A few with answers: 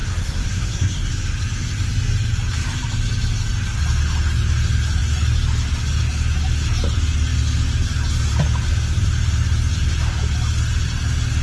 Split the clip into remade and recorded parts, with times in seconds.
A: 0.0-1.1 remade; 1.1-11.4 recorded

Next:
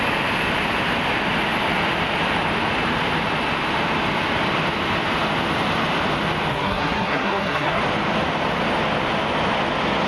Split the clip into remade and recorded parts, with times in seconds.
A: 0.0-6.5 recorded; 6.5-7.8 remade; 7.8-10.1 recorded